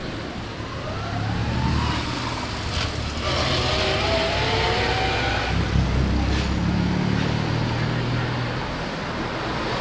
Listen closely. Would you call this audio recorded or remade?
recorded